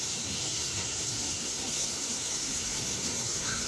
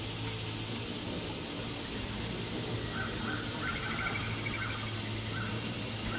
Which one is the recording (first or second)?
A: second